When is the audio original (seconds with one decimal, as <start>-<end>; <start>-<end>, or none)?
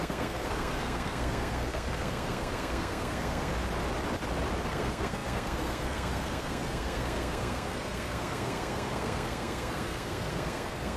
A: 3.5-4.7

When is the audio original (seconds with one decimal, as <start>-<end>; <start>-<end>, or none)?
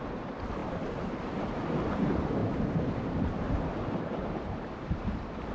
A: none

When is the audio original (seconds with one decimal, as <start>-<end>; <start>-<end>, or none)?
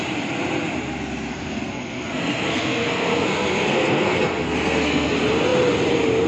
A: 0.0-1.3; 5.1-6.3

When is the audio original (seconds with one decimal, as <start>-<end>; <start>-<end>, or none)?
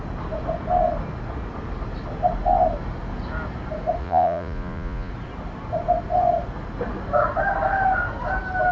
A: 0.0-4.0; 5.1-8.7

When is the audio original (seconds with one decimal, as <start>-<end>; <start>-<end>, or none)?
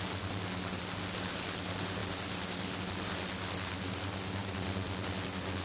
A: 0.0-5.6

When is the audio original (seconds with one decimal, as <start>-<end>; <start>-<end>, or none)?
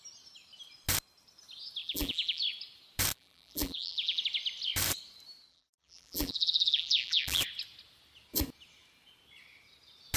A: 0.0-1.8; 2.4-3.1; 4.2-5.5; 7.4-10.2